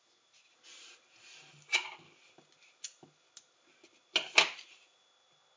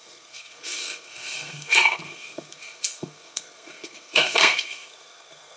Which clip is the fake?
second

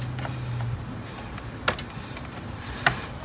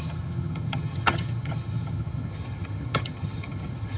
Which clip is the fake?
second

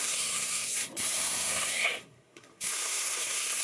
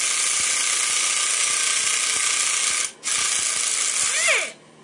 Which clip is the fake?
first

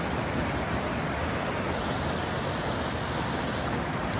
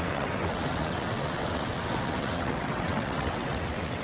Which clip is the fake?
second